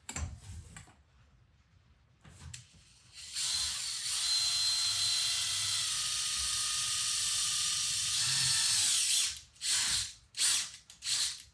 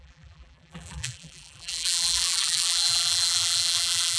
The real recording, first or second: first